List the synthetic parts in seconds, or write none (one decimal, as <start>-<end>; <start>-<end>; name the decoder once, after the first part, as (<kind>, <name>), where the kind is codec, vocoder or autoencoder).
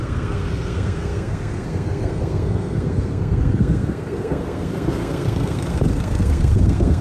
0.0-7.0 (codec, SNAC)